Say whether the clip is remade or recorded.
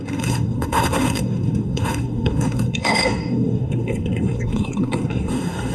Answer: remade